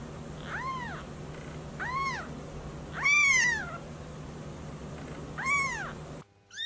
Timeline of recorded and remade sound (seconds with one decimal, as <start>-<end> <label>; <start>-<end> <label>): 0.0-6.7 recorded